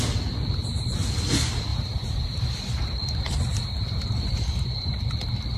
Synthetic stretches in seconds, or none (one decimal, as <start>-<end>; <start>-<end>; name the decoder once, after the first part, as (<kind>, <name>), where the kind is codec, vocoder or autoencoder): 1.7-5.1 (vocoder, BigVGAN v2)